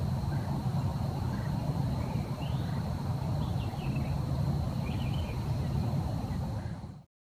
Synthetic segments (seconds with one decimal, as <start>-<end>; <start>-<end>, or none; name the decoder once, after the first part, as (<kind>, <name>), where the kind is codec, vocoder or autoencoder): 5.8-7.3 (vocoder, BigVGAN v2)

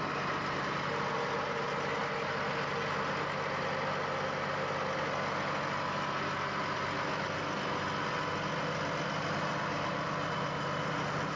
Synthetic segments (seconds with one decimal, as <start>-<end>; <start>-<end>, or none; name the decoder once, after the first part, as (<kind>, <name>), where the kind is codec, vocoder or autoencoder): none

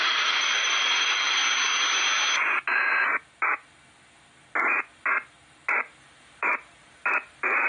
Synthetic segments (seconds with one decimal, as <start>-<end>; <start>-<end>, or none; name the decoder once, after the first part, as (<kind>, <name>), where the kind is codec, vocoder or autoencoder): 0.0-1.4 (vocoder, BigVGAN v2); 6.0-7.7

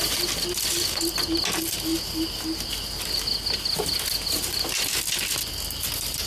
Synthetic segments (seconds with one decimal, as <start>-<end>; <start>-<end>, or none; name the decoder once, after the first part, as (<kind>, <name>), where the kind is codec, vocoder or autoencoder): none

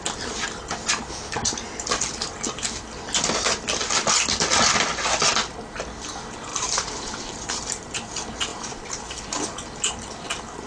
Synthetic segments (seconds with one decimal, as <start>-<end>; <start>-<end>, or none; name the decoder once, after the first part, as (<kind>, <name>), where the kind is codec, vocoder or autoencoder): 6.5-8.1 (vocoder, BigVGAN v2); 8.5-9.3

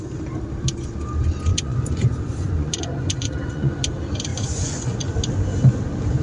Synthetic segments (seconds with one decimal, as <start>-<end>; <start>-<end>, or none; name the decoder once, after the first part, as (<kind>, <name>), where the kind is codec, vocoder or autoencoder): 1.5-3.8 (vocoder, Vocos); 4.3-5.1

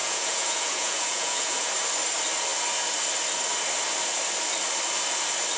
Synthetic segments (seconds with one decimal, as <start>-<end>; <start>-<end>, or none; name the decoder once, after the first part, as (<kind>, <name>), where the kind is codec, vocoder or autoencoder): 0.0-1.7 (vocoder, Vocos)